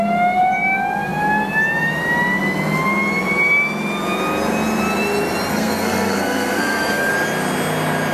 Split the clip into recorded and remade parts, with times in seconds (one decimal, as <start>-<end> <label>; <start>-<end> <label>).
0.0-5.5 recorded; 5.5-7.1 remade; 7.1-8.1 recorded

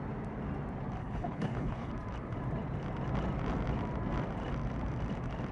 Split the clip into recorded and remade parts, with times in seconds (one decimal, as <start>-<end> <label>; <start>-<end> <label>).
0.0-1.0 recorded; 1.0-1.9 remade; 1.9-5.5 recorded

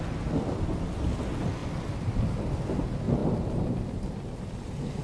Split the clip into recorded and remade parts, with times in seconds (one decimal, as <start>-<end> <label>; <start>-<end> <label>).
0.0-5.0 recorded

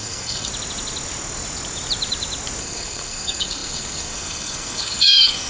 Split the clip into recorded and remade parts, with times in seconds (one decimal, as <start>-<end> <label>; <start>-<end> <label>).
0.0-0.5 remade; 0.5-2.6 recorded; 2.6-5.5 remade

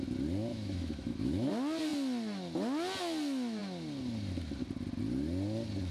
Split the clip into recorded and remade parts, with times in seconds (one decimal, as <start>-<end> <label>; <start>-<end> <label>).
0.0-0.5 recorded; 0.5-1.5 remade; 1.5-5.9 recorded